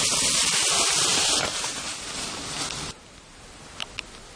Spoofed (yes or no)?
no